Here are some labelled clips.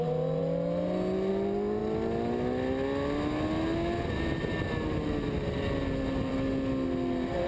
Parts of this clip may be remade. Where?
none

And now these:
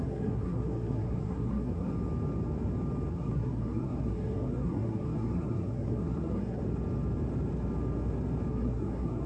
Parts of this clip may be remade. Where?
0.0-1.9 (codec, SNAC); 3.1-6.6; 8.5-9.3

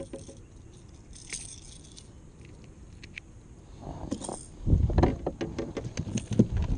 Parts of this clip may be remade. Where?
none

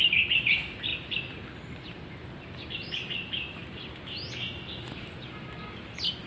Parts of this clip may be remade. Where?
none